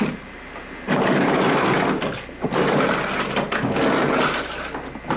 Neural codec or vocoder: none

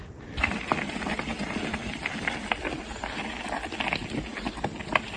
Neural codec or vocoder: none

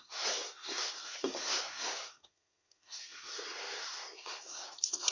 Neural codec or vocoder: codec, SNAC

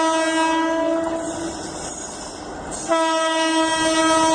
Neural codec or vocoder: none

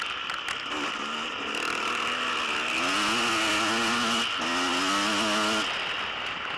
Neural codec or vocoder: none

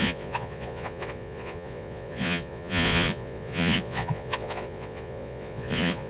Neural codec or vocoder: vocoder, Vocos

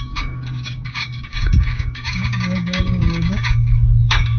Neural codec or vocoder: codec, DAC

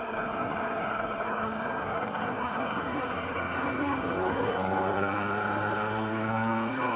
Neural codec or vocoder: codec, SNAC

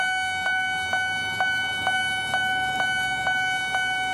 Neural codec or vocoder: none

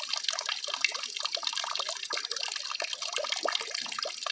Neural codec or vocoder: none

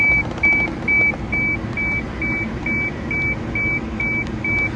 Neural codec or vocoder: none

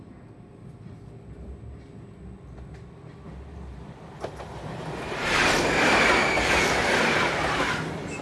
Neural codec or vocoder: none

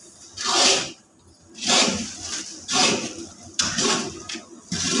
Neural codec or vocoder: vocoder, BigVGAN v2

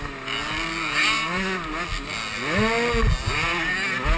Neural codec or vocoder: none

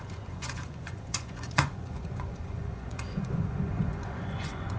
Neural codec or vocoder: vocoder, Vocos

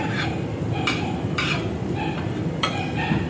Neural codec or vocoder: vocoder, BigVGAN v2